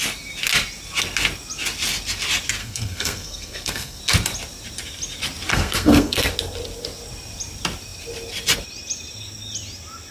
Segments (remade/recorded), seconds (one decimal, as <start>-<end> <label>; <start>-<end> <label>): 0.0-2.6 recorded; 2.6-4.0 remade; 4.0-5.5 recorded; 5.5-6.3 remade; 6.3-10.1 recorded

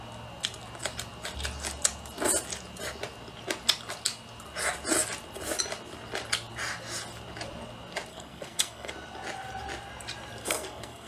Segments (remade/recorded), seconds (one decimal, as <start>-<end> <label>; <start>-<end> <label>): 0.0-8.1 recorded; 8.1-8.9 remade; 8.9-10.4 recorded; 10.4-11.1 remade

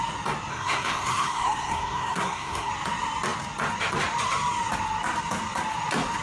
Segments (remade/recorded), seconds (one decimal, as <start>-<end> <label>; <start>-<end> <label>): 0.0-0.5 recorded; 0.5-2.7 remade; 2.7-6.2 recorded

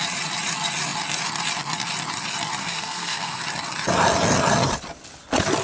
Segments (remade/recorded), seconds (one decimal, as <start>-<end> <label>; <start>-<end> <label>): 0.0-2.6 recorded; 2.6-3.4 remade; 3.4-5.6 recorded

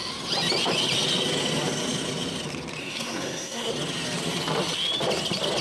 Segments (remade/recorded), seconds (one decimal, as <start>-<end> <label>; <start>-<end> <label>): 0.0-2.8 recorded; 2.8-3.7 remade; 3.7-5.6 recorded